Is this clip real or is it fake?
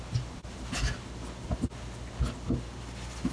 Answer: real